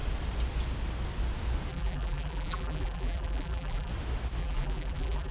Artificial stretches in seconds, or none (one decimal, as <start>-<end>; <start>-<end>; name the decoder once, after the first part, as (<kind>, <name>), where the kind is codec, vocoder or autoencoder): 1.7-3.9 (vocoder, BigVGAN v2); 4.4-5.3